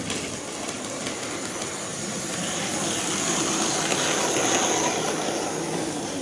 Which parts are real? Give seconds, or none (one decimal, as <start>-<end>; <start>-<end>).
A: 0.0-1.9; 2.4-6.2